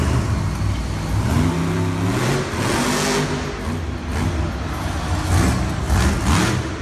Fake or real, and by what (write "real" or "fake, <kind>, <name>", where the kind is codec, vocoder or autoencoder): real